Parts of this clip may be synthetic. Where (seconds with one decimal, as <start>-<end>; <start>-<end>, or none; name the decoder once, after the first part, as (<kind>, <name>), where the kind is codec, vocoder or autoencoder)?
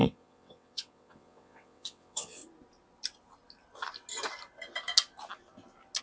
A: 0.0-2.4 (vocoder, WaveNeXt)